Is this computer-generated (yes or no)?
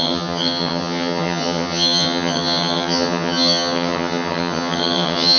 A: yes